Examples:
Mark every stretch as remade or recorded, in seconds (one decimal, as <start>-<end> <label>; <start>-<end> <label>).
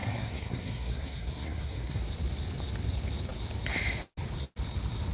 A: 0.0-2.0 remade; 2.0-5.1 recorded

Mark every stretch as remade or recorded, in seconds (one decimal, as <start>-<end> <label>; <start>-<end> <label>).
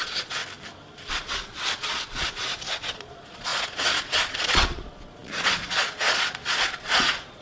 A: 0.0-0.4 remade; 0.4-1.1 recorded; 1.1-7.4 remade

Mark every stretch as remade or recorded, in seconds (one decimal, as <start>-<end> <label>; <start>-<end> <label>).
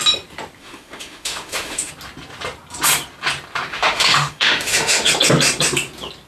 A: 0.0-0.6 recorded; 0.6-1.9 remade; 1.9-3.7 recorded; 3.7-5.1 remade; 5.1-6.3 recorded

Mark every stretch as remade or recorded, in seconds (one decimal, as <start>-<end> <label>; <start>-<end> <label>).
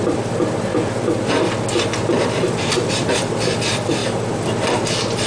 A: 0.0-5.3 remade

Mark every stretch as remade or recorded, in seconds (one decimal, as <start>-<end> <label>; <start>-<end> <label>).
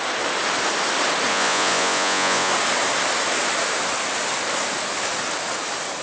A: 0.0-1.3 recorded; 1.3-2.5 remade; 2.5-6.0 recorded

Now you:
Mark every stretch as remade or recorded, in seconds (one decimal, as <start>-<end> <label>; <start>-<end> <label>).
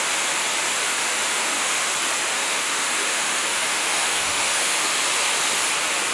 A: 0.0-0.8 recorded; 0.8-1.9 remade; 1.9-2.3 recorded; 2.3-5.0 remade; 5.0-6.1 recorded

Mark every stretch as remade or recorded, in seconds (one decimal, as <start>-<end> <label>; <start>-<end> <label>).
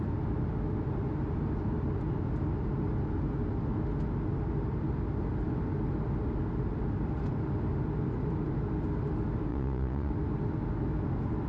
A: 0.0-9.5 recorded; 9.5-10.1 remade; 10.1-11.5 recorded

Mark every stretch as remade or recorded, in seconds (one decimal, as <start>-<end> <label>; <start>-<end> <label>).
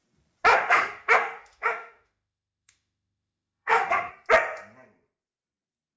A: 0.0-0.5 recorded; 0.5-4.1 remade; 4.1-6.0 recorded